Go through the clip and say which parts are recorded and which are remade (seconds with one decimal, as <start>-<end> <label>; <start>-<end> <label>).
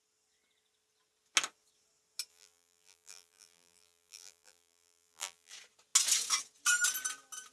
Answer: 0.0-2.3 recorded; 2.3-5.5 remade; 5.5-7.5 recorded